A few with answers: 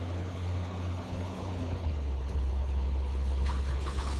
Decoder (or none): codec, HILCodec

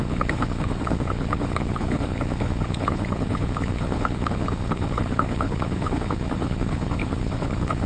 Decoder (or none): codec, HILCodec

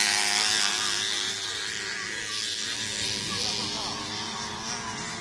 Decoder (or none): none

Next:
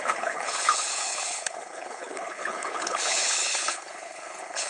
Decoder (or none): codec, HILCodec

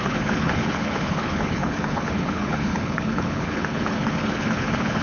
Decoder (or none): codec, HILCodec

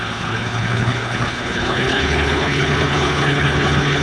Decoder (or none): codec, HILCodec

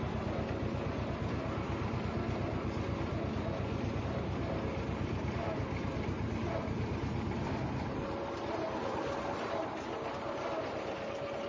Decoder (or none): none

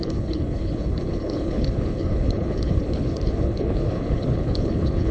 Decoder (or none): codec, HILCodec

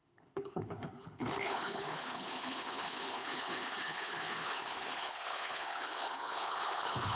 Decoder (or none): codec, HILCodec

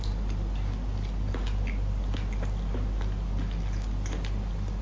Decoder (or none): none